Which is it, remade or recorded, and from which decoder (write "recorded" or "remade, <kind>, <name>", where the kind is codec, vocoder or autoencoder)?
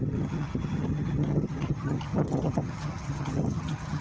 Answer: remade, vocoder, HiFi-GAN